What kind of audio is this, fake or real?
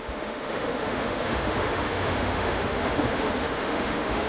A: fake